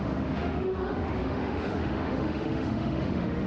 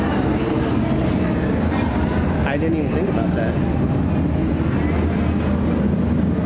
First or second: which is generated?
first